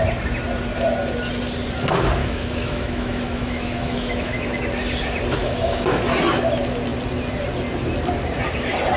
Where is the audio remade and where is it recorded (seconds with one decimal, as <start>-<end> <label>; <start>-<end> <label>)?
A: 0.0-2.2 recorded; 2.2-4.5 remade; 4.5-5.4 recorded; 5.4-6.0 remade; 6.0-9.0 recorded